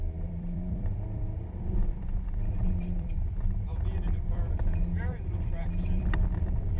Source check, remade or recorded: remade